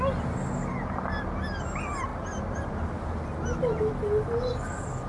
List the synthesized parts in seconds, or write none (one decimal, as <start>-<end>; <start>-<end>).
none